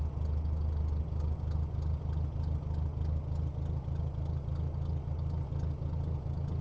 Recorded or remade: recorded